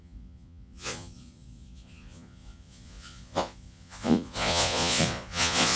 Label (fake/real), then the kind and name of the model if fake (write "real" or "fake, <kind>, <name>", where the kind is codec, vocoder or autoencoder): fake, vocoder, Vocos